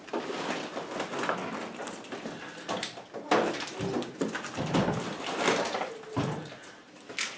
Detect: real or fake fake